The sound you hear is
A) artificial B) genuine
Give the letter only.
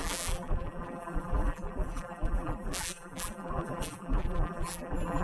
A